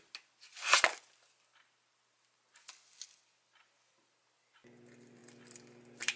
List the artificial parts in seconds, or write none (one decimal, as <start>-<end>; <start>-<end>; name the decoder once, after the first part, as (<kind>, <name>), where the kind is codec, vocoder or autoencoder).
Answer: none